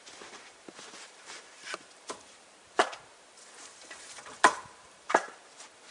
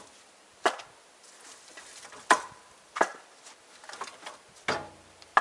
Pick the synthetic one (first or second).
first